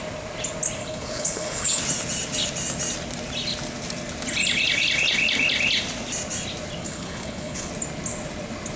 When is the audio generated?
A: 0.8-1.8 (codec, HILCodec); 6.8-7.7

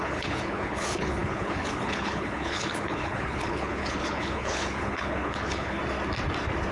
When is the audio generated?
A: 0.0-5.8 (codec, HILCodec)

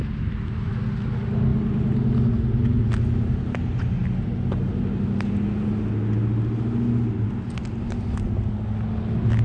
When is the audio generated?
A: none

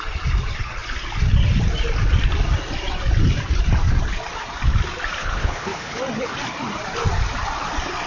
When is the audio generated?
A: 5.2-6.0 (codec, HILCodec)

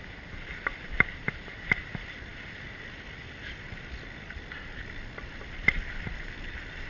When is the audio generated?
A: none

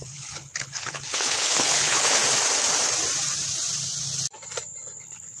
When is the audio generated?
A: 0.0-2.2 (codec, HILCodec); 5.0-5.4

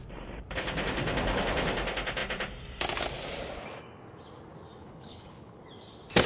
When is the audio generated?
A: 4.8-5.6 (codec, HILCodec)